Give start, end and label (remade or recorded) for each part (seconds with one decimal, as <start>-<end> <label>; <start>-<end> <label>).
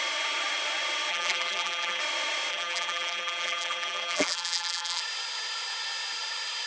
0.0-1.1 recorded; 1.1-2.0 remade; 2.0-2.5 recorded; 2.5-5.0 remade; 5.0-6.7 recorded